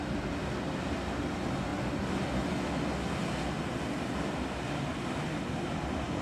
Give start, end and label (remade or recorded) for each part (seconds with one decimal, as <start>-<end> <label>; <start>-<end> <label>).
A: 0.0-6.2 recorded